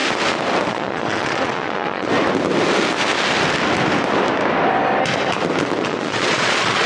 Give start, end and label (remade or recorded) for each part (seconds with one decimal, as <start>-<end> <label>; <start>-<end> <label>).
0.0-0.7 recorded; 0.7-2.1 remade; 2.1-5.8 recorded; 5.8-6.9 remade